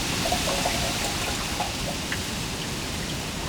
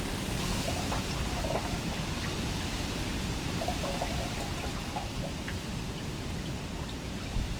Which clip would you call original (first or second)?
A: first